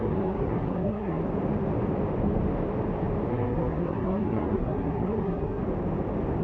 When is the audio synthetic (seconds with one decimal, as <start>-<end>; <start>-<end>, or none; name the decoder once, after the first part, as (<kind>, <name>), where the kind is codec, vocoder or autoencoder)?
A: 0.0-1.2 (codec, SNAC); 3.3-5.6